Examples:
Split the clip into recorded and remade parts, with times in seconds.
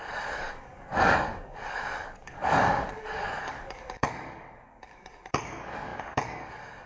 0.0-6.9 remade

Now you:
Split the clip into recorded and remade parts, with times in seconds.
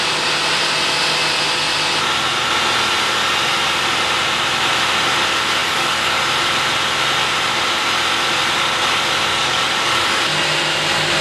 0.0-5.6 recorded; 5.6-6.2 remade; 6.2-9.3 recorded; 9.3-10.2 remade; 10.2-11.2 recorded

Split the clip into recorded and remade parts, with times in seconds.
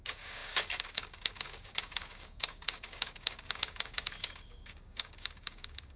0.0-6.0 remade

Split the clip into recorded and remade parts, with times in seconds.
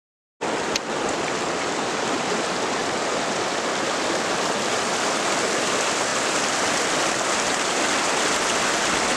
0.0-9.2 recorded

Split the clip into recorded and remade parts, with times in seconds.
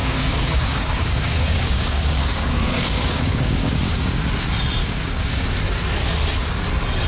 0.0-4.3 remade; 4.3-4.8 recorded; 4.8-5.5 remade; 5.5-7.1 recorded